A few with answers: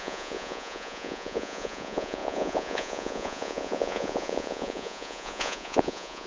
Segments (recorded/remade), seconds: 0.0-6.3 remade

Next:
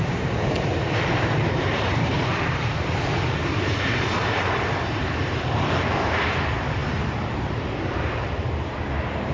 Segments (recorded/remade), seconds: 0.0-9.3 remade

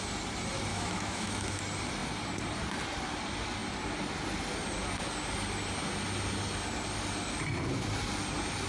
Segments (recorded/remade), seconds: 0.0-0.7 recorded; 0.7-1.6 remade; 1.6-8.7 recorded

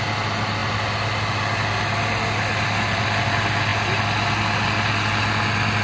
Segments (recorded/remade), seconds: 0.0-5.8 recorded

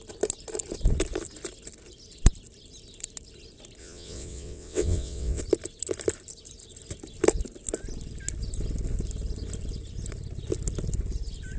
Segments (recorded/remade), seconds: 0.0-3.8 recorded; 3.8-5.4 remade; 5.4-11.6 recorded

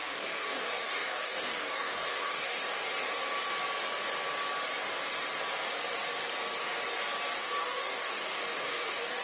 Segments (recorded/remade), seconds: 0.0-2.6 remade; 2.6-7.6 recorded; 7.6-9.2 remade

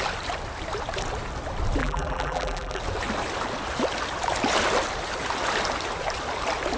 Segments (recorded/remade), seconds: 0.0-1.8 recorded; 1.8-2.8 remade; 2.8-6.8 recorded

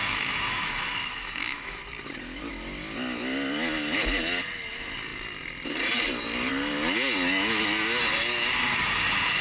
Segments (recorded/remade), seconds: 0.0-1.8 remade; 1.8-9.4 recorded